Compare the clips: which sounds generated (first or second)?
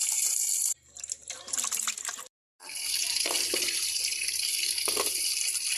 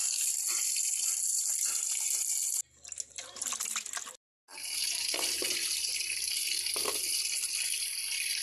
first